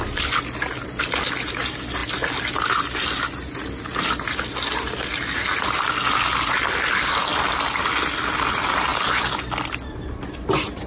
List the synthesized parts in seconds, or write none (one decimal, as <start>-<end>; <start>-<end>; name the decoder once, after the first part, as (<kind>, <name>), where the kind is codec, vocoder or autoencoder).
none